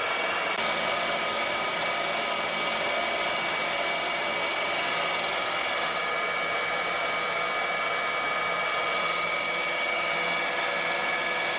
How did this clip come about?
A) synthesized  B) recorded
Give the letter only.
B